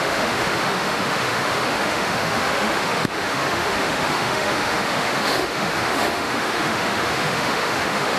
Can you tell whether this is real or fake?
fake